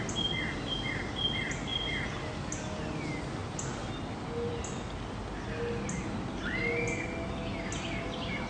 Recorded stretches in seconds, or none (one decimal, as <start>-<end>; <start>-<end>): 0.0-8.5